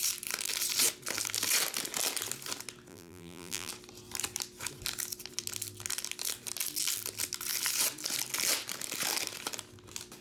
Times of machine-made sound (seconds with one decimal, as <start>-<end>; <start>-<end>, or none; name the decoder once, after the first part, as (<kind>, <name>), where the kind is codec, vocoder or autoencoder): 2.9-3.7 (vocoder, BigVGAN v2)